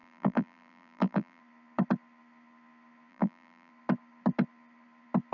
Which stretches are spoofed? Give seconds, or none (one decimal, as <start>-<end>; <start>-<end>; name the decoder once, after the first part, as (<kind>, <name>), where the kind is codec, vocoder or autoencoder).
0.0-1.4 (vocoder, BigVGAN v2); 3.1-3.7